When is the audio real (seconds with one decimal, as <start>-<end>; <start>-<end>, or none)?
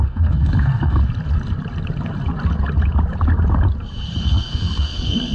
1.0-4.2